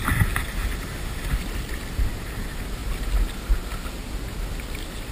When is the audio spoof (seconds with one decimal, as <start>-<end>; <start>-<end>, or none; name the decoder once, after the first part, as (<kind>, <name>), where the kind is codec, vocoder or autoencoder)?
0.9-1.4 (autoencoder, DAC-VAE)